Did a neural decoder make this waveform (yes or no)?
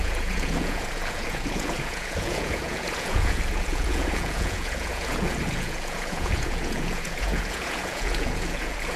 yes